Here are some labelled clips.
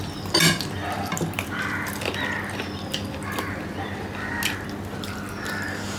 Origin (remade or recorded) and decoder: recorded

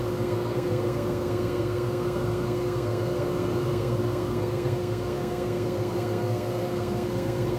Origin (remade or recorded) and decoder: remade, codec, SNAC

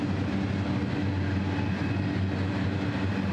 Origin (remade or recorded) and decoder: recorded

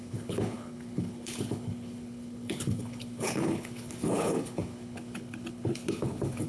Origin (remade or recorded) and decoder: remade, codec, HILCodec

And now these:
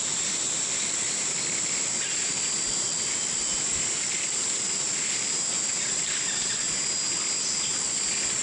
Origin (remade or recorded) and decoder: recorded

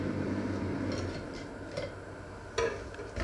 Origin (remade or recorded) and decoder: recorded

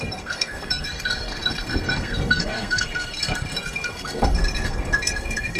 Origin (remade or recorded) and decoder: remade, codec, SNAC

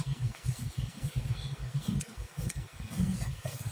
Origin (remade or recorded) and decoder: remade, codec, SNAC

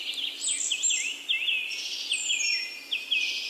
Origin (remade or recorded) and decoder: recorded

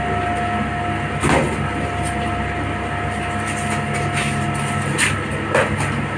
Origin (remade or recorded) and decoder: recorded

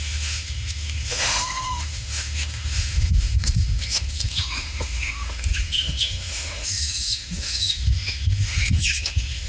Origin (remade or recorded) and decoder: remade, autoencoder, DAC-VAE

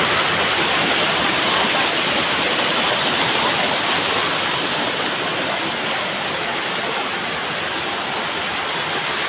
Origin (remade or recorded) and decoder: recorded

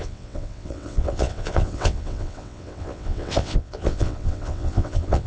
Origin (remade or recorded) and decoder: remade, vocoder, WaveNeXt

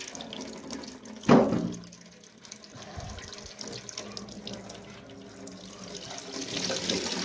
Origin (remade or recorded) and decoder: recorded